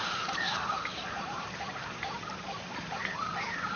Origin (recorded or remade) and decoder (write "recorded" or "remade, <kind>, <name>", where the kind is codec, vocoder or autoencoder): remade, vocoder, BigVGAN v2